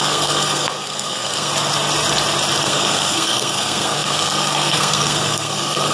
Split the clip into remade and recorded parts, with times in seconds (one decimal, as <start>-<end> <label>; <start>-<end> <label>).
0.0-1.5 remade; 1.5-2.6 recorded; 2.6-5.9 remade